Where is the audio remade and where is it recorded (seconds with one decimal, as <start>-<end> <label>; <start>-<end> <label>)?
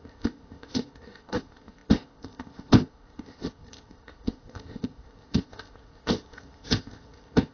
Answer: 0.0-7.5 remade